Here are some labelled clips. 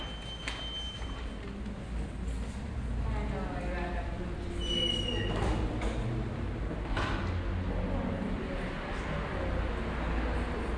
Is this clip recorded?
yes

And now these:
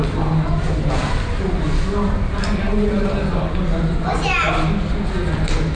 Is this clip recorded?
yes